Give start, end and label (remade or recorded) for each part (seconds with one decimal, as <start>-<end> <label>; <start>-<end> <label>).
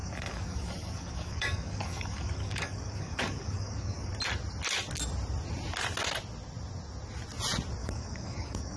0.0-4.1 remade; 4.1-7.8 recorded; 7.8-8.8 remade